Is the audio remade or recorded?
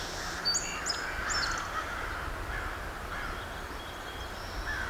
recorded